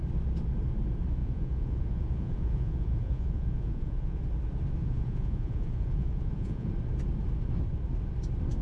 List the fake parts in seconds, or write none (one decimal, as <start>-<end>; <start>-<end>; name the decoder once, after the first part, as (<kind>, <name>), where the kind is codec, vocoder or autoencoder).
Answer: 1.2-4.2 (vocoder, Vocos); 4.8-6.7